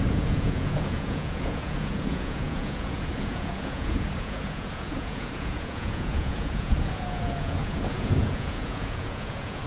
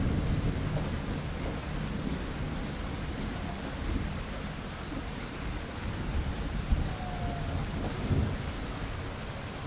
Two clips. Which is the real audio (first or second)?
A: second